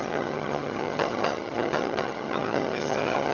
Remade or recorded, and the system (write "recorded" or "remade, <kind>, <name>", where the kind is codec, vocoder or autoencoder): remade, vocoder, HiFi-GAN